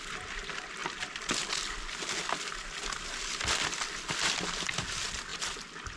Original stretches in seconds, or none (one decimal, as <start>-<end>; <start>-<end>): 0.0-6.0